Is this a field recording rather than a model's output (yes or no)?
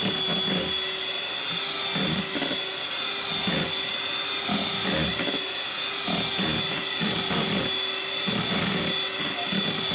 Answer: yes